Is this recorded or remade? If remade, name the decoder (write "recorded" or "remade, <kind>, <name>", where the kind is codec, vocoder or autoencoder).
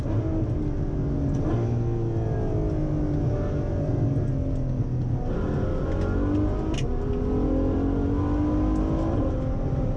recorded